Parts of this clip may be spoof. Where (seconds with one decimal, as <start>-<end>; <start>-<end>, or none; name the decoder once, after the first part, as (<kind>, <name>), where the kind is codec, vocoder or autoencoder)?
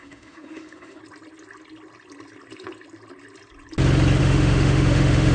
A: 0.0-1.0 (autoencoder, DAC-VAE); 4.2-5.3